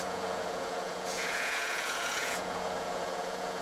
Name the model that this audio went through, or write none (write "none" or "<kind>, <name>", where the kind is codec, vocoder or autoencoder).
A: vocoder, Vocos